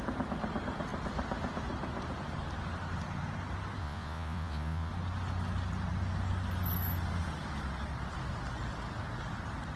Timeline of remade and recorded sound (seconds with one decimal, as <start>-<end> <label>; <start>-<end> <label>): 0.0-3.8 recorded; 3.8-4.9 remade; 4.9-9.8 recorded

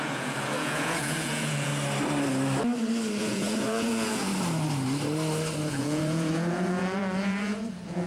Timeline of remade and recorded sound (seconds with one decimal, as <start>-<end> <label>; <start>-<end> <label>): 0.0-1.7 remade; 1.7-3.2 recorded; 3.2-4.3 remade; 4.3-5.7 recorded; 5.7-8.1 remade